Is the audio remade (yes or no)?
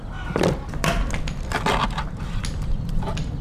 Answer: no